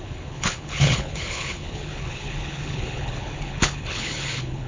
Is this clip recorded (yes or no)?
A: no